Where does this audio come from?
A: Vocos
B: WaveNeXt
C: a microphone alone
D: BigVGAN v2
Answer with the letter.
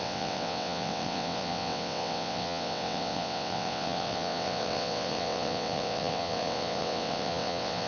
B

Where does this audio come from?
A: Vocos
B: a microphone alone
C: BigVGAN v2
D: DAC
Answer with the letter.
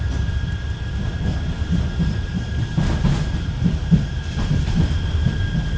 C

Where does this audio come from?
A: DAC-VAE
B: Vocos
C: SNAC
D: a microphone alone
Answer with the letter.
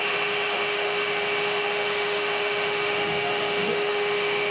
A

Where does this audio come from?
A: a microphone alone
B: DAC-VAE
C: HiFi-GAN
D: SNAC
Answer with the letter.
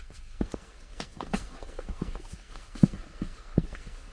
D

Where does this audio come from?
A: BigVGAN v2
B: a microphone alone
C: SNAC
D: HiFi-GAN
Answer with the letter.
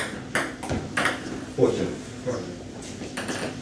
B